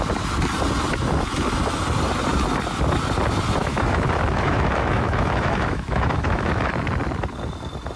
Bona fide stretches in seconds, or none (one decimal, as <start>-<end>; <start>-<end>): 0.0-3.6; 6.7-8.0